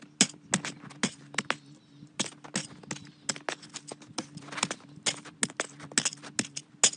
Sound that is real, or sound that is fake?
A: real